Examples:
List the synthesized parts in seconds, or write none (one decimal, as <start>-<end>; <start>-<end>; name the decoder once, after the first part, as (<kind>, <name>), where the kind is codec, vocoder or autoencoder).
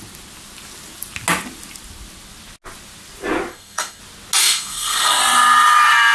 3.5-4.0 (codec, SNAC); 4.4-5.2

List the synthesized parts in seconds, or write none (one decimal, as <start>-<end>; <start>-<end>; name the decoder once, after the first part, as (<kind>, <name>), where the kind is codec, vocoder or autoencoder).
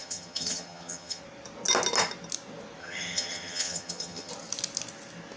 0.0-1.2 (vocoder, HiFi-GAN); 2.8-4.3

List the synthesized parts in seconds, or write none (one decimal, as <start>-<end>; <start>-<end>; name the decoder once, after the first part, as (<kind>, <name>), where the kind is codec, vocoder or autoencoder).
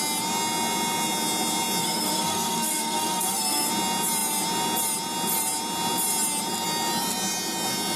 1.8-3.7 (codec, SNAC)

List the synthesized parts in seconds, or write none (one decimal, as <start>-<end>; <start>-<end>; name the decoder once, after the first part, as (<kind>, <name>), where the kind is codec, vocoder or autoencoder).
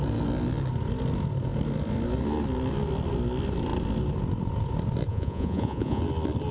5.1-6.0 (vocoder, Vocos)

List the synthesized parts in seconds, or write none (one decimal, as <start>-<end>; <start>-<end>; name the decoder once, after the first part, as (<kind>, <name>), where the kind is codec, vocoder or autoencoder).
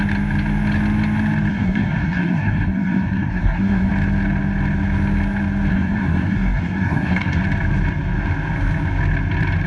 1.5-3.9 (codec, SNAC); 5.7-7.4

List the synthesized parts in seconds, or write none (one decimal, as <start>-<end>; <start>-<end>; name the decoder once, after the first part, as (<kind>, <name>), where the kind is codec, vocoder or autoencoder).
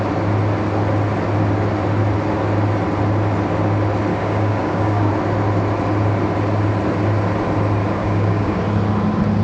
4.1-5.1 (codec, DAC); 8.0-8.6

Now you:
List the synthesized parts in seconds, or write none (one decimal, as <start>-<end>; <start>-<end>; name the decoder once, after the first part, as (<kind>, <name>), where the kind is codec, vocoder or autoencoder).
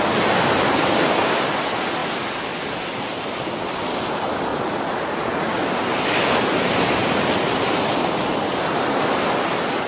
4.5-5.6 (vocoder, Vocos)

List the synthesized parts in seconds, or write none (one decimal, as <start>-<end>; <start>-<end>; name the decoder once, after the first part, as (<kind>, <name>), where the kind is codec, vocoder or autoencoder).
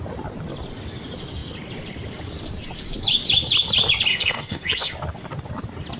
4.1-4.9 (codec, SNAC)